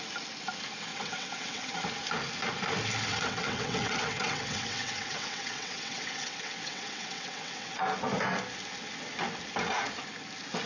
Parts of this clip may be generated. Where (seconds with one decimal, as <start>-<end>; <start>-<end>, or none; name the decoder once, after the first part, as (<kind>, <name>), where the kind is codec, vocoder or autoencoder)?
0.9-1.7 (vocoder, WaveNeXt); 3.1-7.8